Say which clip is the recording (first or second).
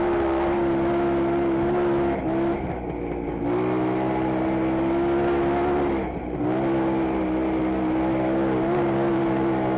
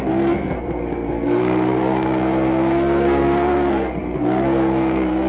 first